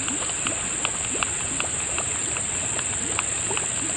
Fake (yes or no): no